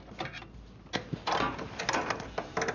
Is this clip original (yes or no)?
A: yes